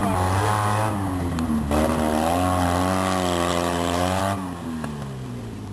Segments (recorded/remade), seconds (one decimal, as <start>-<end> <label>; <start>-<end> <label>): 0.0-3.5 recorded; 3.5-4.2 remade; 4.2-5.7 recorded